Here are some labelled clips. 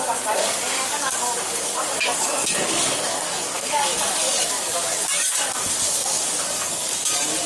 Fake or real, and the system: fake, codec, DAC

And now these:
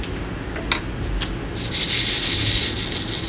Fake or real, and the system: real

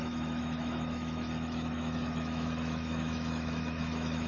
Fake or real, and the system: fake, autoencoder, DAC-VAE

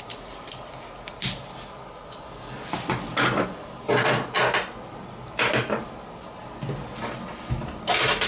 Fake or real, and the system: real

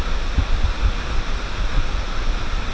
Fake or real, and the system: real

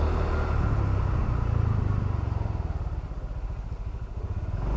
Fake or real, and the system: real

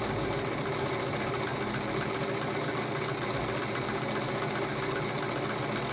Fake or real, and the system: real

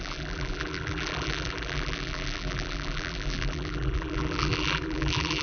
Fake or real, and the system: fake, vocoder, BigVGAN v2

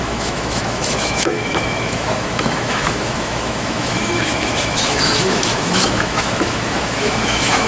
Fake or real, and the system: fake, autoencoder, DAC-VAE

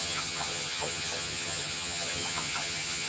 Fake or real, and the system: fake, vocoder, HiFi-GAN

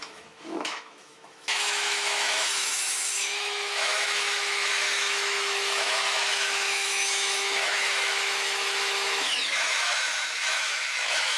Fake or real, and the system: fake, autoencoder, DAC-VAE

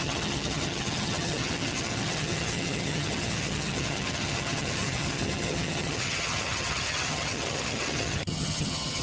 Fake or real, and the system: fake, vocoder, HiFi-GAN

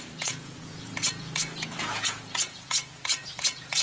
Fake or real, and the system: fake, vocoder, Vocos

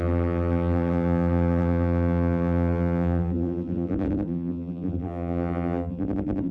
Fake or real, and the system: fake, vocoder, BigVGAN v2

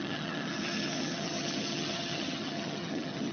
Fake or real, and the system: fake, vocoder, HiFi-GAN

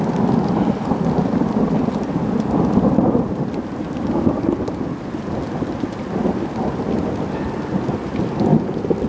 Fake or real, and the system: real